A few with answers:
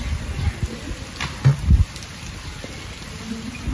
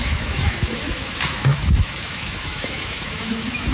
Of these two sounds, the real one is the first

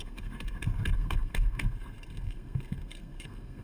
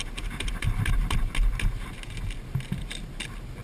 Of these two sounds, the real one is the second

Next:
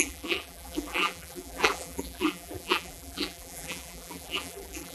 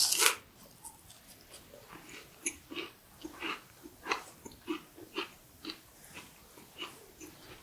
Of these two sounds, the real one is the second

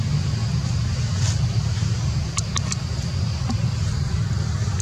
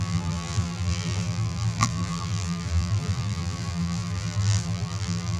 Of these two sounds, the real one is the first